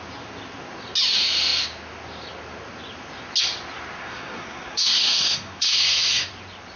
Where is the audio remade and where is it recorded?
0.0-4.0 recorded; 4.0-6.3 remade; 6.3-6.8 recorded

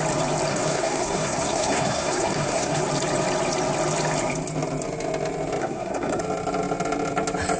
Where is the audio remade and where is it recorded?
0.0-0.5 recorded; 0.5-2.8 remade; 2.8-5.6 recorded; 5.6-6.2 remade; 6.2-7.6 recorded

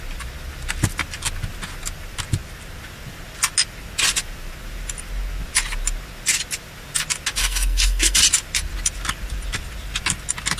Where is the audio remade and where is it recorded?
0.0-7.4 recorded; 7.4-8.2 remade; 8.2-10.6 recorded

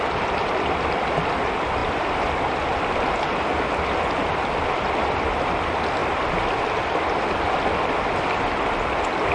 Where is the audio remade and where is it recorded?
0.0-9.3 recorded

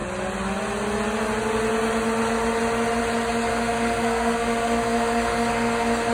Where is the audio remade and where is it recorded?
0.0-3.5 recorded; 3.5-6.1 remade